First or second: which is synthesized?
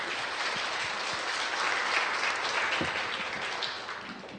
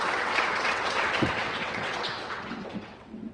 second